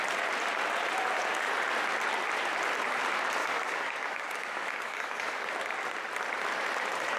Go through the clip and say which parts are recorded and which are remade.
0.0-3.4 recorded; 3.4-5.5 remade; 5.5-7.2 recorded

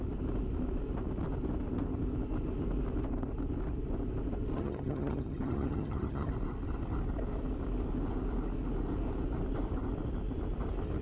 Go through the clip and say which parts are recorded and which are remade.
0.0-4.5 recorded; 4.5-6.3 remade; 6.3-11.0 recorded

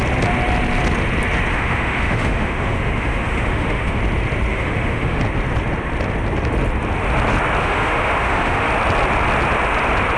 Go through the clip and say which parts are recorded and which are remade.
0.0-1.5 recorded; 1.5-4.0 remade; 4.0-4.5 recorded; 4.5-5.2 remade; 5.2-7.6 recorded; 7.6-8.7 remade; 8.7-10.2 recorded

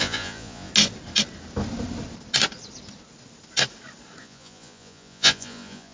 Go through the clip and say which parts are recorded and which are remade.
0.0-0.7 remade; 0.7-4.2 recorded; 4.2-5.9 remade

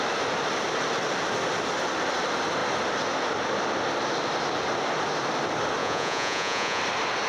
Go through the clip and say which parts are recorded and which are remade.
0.0-5.8 recorded; 5.8-6.8 remade; 6.8-7.3 recorded

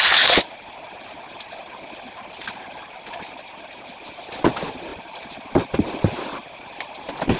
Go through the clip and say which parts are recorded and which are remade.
0.0-7.4 recorded

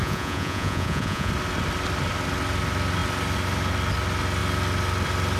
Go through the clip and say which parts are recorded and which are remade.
0.0-1.3 remade; 1.3-5.4 recorded

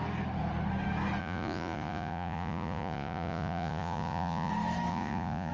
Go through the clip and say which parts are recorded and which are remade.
0.0-1.2 recorded; 1.2-4.5 remade; 4.5-4.9 recorded; 4.9-5.5 remade